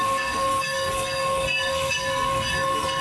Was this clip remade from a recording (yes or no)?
yes